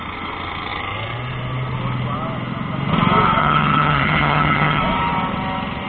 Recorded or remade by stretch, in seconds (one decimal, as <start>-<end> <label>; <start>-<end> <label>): 0.0-3.4 recorded; 3.4-4.8 remade; 4.8-5.9 recorded